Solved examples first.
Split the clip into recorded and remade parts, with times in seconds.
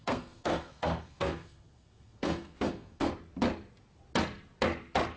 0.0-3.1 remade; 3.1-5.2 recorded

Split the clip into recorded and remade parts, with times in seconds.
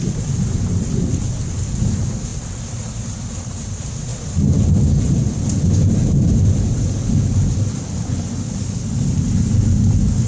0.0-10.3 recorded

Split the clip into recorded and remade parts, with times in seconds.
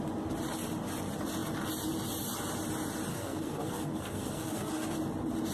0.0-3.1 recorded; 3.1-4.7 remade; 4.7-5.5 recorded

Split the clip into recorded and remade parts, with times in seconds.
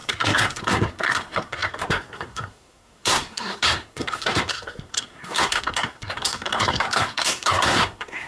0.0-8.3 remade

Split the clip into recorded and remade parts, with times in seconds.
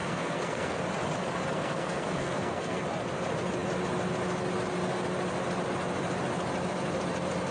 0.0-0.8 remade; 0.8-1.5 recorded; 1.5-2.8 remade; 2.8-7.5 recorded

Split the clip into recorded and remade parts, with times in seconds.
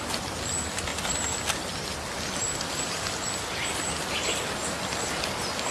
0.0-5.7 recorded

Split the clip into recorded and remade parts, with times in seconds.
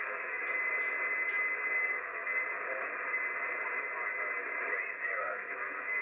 0.0-0.4 remade; 0.4-1.8 recorded; 1.8-2.4 remade; 2.4-5.2 recorded; 5.2-6.0 remade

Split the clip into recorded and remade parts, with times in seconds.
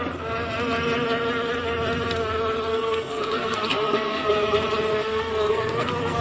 0.0-2.7 recorded; 2.7-4.3 remade; 4.3-4.9 recorded; 4.9-6.2 remade